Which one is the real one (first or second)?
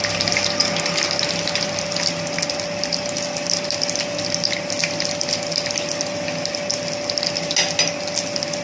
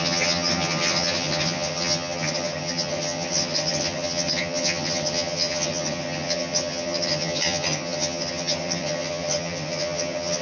first